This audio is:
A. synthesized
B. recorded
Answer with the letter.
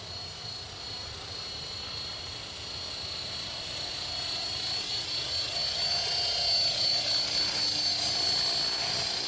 B